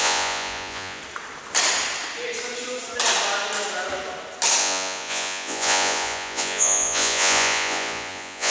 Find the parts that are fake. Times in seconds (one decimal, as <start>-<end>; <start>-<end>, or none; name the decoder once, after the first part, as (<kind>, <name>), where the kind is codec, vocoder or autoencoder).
0.0-1.0 (vocoder, Vocos); 4.6-8.5